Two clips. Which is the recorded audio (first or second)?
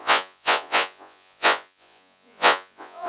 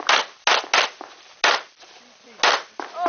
second